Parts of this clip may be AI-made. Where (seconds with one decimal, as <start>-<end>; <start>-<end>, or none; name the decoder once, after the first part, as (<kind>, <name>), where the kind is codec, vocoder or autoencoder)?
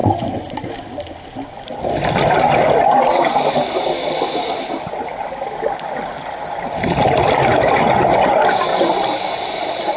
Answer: 0.0-0.7 (vocoder, Vocos)